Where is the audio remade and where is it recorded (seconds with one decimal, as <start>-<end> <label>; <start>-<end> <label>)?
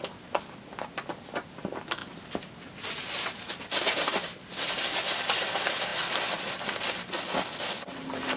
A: 0.0-8.4 recorded